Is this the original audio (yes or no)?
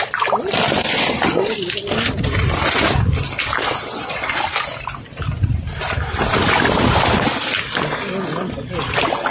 yes